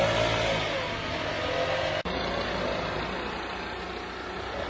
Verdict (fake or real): real